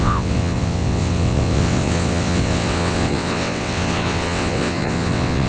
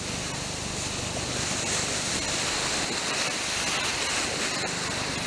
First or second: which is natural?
second